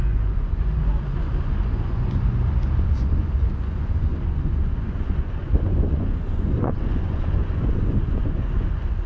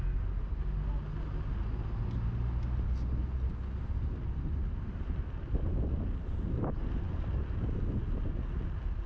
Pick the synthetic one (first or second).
first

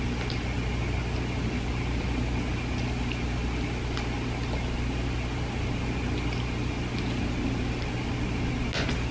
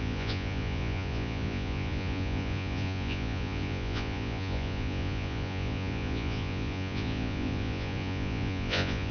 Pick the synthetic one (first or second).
second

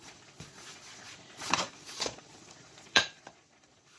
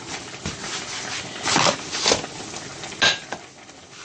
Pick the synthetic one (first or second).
first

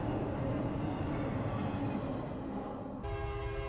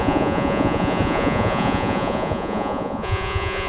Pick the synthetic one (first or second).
second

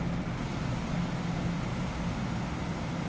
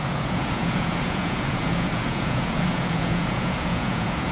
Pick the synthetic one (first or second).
second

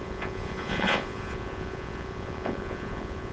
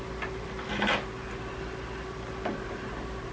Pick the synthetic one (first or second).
first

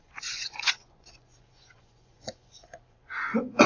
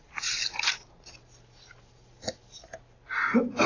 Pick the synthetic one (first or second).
first